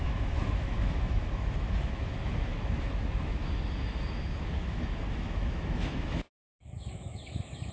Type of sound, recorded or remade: remade